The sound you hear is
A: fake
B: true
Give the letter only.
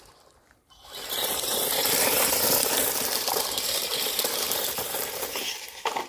A